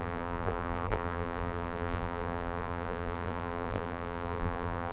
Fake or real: fake